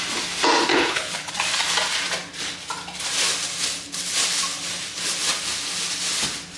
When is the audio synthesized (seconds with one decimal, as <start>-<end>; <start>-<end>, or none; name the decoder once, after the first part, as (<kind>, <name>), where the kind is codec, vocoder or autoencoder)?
0.7-1.3 (codec, HILCodec)